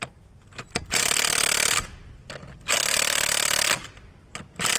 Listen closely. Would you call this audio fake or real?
real